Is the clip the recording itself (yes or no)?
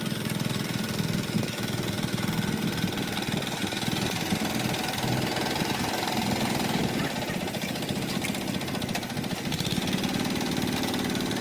yes